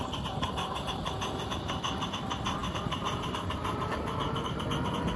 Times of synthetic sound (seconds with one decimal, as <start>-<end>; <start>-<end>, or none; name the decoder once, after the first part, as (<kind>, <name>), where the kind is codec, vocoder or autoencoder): 2.6-4.7 (vocoder, BigVGAN v2)